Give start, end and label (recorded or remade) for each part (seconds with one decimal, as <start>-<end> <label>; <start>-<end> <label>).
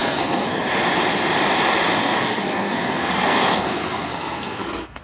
0.0-0.6 remade; 0.6-2.0 recorded; 2.0-5.0 remade